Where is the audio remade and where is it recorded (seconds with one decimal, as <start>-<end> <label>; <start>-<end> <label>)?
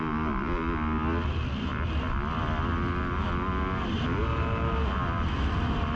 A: 0.0-6.0 recorded